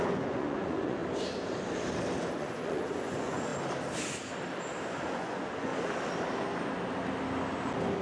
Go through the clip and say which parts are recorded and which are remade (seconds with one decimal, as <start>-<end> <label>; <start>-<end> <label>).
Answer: 0.0-1.0 remade; 1.0-2.3 recorded; 2.3-3.5 remade; 3.5-4.9 recorded; 4.9-5.7 remade; 5.7-8.0 recorded